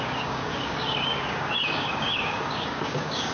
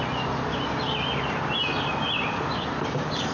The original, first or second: second